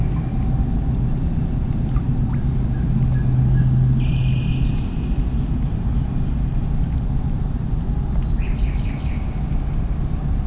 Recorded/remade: recorded